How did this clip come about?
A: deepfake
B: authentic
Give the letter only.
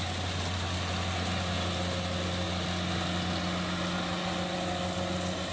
B